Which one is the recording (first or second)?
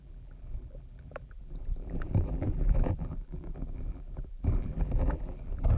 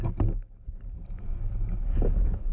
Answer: second